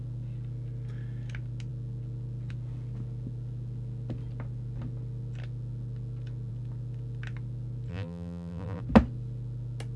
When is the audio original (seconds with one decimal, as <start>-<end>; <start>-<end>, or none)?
0.0-7.9; 8.8-10.0